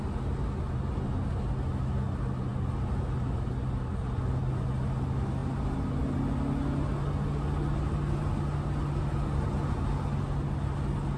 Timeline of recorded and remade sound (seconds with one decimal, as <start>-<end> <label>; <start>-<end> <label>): 0.0-11.2 recorded